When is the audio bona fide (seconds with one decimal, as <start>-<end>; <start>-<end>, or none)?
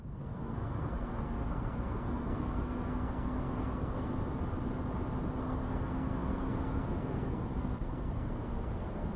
4.1-5.4